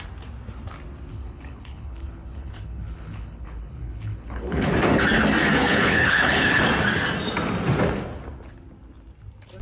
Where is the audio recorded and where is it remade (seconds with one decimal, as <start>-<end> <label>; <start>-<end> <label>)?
0.0-1.1 recorded; 1.1-4.7 remade; 4.7-5.6 recorded; 5.6-6.6 remade; 6.6-9.6 recorded